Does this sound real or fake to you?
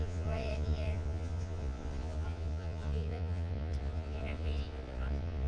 fake